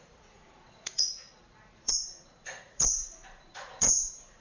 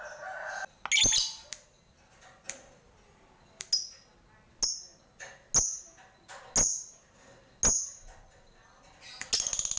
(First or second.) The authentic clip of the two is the second